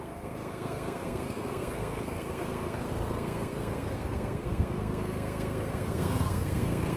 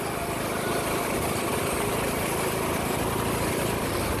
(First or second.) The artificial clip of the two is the first